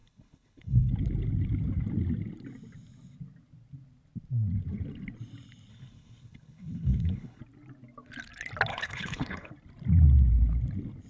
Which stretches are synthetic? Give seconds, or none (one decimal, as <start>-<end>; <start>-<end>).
0.0-0.9; 5.7-7.4; 8.7-9.5